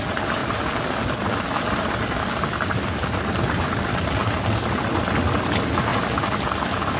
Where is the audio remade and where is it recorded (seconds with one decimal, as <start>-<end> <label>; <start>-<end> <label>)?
0.0-7.0 recorded